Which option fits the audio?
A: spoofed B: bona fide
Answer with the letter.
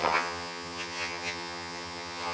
A